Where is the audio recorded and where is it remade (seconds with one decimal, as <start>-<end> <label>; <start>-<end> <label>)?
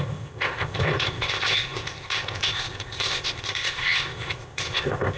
0.0-5.2 remade